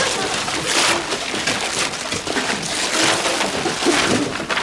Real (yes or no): yes